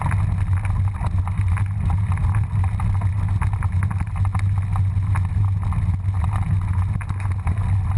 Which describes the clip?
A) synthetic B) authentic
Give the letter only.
B